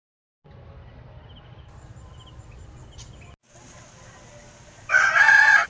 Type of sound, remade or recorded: recorded